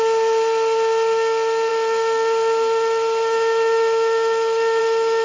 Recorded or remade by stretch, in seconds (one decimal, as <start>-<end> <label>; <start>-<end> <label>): 0.0-5.2 recorded